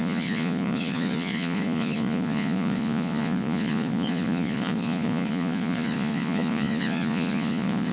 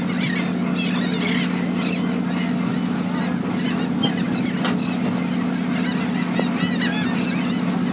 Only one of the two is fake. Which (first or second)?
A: first